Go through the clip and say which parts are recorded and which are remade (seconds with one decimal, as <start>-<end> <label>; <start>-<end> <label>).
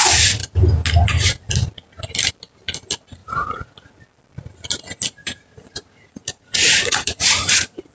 0.0-3.2 recorded; 3.2-3.9 remade; 3.9-5.2 recorded; 5.2-7.9 remade